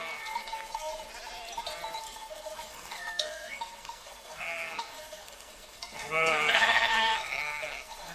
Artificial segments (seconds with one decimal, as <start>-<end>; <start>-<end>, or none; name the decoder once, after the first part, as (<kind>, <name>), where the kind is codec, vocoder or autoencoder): 0.0-0.9 (codec, SNAC); 2.0-8.1